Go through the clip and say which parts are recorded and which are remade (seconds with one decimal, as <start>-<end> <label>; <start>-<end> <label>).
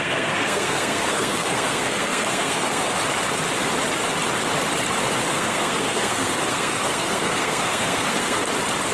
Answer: 0.0-3.0 remade; 3.0-5.3 recorded; 5.3-8.4 remade; 8.4-8.9 recorded